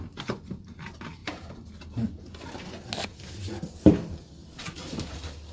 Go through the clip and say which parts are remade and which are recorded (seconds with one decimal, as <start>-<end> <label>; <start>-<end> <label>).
0.0-1.2 recorded; 1.2-2.4 remade; 2.4-4.4 recorded; 4.4-5.1 remade; 5.1-5.5 recorded